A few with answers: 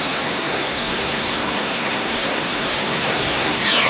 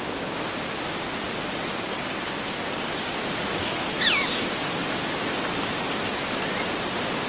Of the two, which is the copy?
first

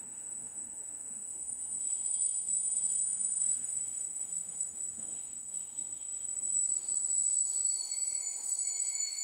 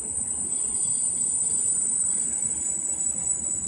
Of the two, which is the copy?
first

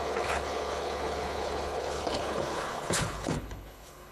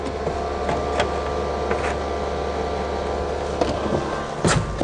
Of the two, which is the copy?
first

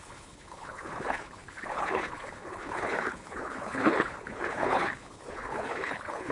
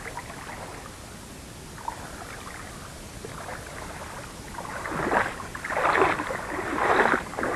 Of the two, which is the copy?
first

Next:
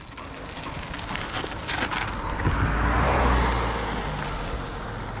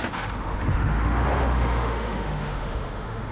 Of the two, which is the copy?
second